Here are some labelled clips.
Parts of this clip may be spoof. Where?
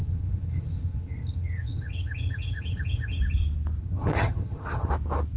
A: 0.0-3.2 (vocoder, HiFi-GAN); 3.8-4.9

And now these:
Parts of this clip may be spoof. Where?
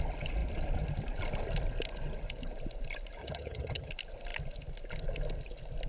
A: 3.2-3.9 (vocoder, HiFi-GAN)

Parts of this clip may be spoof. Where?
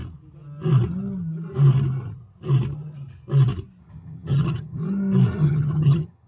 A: 3.8-4.8 (vocoder, HiFi-GAN); 5.4-6.3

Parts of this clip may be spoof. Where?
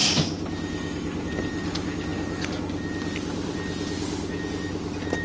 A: none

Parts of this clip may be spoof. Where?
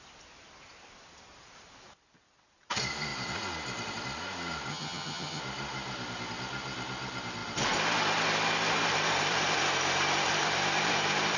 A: 4.7-5.4 (vocoder, HiFi-GAN)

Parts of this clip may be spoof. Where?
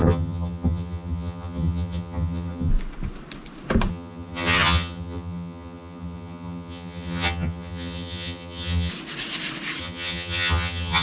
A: 0.0-2.7 (vocoder, HiFi-GAN); 3.9-8.9; 9.8-11.0